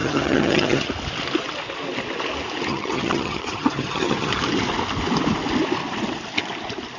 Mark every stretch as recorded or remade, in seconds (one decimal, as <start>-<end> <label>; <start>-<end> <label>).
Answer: 0.0-0.9 remade; 0.9-2.7 recorded; 2.7-4.3 remade; 4.3-7.0 recorded